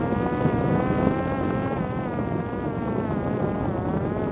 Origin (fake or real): real